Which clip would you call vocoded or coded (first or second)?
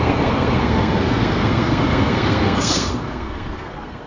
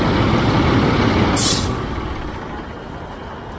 first